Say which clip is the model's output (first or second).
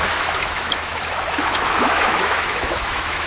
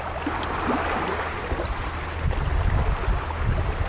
first